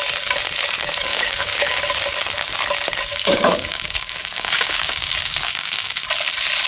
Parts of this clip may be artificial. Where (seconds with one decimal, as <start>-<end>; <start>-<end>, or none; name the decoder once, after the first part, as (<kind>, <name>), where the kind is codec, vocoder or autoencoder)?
1.1-1.8 (codec, DAC); 3.1-6.0